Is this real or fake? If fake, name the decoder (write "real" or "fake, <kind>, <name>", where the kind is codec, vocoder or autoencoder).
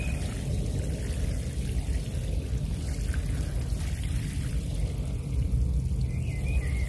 real